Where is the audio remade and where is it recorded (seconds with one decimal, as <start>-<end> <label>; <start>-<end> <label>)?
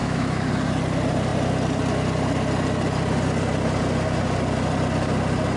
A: 0.0-0.5 remade; 0.5-5.6 recorded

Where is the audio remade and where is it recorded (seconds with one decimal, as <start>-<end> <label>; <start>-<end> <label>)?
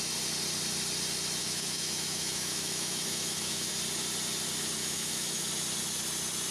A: 0.0-1.4 recorded; 1.4-3.7 remade; 3.7-4.8 recorded; 4.8-5.5 remade; 5.5-6.5 recorded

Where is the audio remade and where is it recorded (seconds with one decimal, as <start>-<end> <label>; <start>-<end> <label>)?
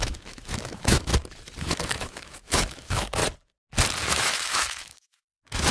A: 0.0-1.1 remade; 1.1-1.6 recorded; 1.6-3.2 remade; 3.2-4.1 recorded; 4.1-5.7 remade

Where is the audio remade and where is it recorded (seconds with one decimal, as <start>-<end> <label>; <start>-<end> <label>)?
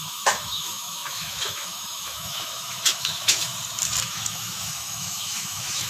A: 0.0-3.5 remade; 3.5-4.0 recorded; 4.0-5.9 remade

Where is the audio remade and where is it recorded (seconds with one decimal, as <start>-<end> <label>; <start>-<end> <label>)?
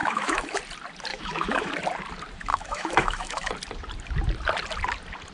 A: 0.0-0.6 remade; 0.6-1.1 recorded; 1.1-1.7 remade; 1.7-2.5 recorded; 2.5-3.5 remade; 3.5-5.3 recorded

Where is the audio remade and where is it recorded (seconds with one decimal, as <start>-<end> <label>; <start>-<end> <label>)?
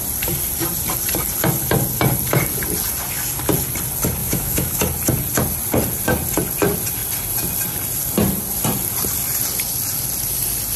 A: 0.0-4.2 recorded; 4.2-4.8 remade; 4.8-10.8 recorded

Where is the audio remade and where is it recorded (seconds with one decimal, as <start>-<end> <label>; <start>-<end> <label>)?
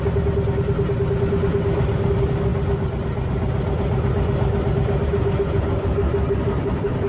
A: 0.0-7.1 recorded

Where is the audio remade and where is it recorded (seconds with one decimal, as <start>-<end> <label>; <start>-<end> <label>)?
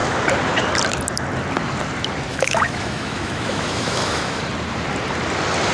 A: 0.0-2.3 recorded; 2.3-4.4 remade; 4.4-5.7 recorded